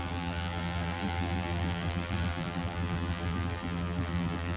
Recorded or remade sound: remade